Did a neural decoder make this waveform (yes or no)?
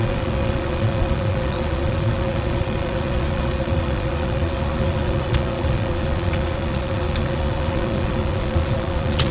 yes